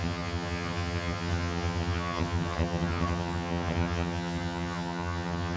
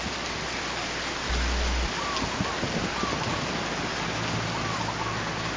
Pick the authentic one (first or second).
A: second